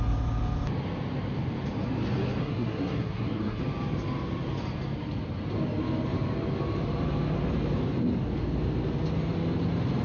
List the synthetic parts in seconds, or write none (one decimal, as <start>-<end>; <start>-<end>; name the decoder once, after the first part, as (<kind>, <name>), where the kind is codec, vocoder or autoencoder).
2.4-3.6 (codec, SNAC)